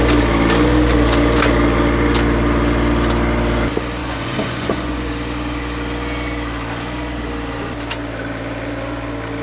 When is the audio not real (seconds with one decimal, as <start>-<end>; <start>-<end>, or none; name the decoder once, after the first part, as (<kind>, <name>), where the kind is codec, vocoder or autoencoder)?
4.0-5.1 (vocoder, Vocos)